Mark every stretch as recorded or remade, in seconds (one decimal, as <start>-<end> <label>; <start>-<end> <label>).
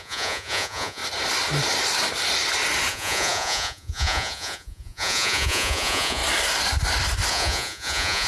0.0-1.0 remade; 1.0-2.9 recorded; 2.9-6.2 remade; 6.2-7.3 recorded; 7.3-8.3 remade